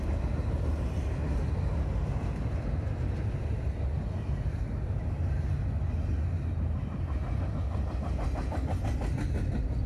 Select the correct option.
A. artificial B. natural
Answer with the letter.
B